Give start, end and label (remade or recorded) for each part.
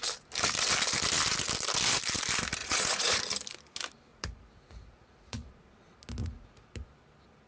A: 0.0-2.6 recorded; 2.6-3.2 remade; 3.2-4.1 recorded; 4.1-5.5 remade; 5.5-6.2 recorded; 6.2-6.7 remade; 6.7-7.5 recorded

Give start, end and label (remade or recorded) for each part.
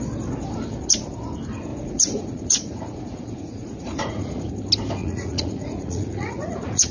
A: 0.0-1.7 recorded; 1.7-4.5 remade; 4.5-5.0 recorded; 5.0-6.9 remade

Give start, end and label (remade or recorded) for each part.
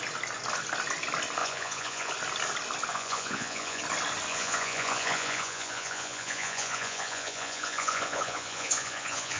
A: 0.0-1.4 recorded; 1.4-2.1 remade; 2.1-2.9 recorded; 2.9-3.8 remade; 3.8-4.3 recorded; 4.3-9.4 remade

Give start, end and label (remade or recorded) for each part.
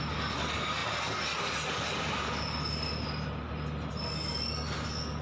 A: 0.0-5.2 recorded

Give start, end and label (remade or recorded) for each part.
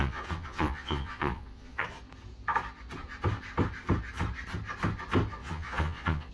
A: 0.0-2.0 remade; 2.0-5.4 recorded; 5.4-6.3 remade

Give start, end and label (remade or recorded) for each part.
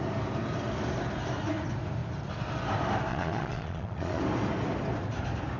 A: 0.0-3.1 recorded; 3.1-4.2 remade; 4.2-5.6 recorded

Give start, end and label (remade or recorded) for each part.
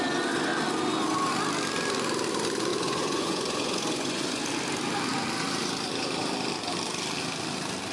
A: 0.0-2.7 recorded; 2.7-4.4 remade; 4.4-7.9 recorded